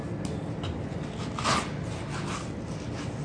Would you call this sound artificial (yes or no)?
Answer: no